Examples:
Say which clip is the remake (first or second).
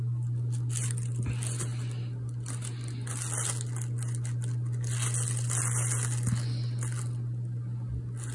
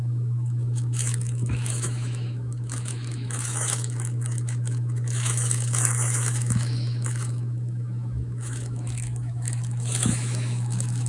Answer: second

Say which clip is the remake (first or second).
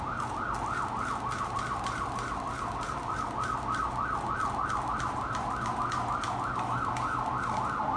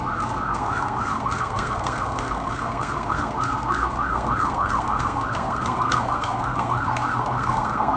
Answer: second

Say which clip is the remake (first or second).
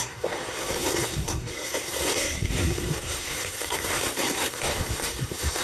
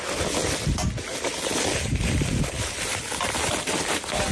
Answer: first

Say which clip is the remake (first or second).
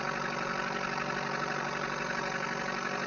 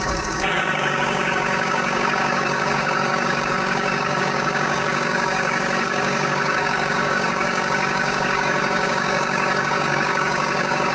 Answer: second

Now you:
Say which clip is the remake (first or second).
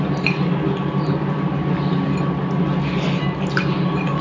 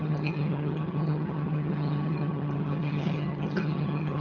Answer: second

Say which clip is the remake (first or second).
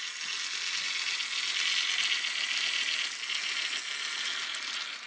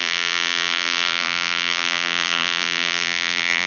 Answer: second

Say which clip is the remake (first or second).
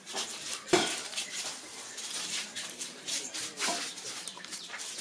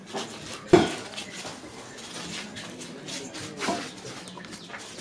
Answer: first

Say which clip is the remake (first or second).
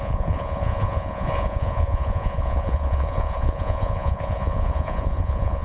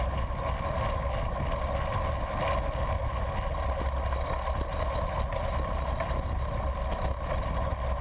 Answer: first